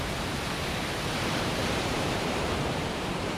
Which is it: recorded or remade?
remade